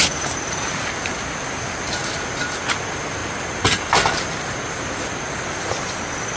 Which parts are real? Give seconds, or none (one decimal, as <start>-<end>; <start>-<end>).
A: 0.0-6.4